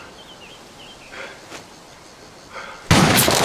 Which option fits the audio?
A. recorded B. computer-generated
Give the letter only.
A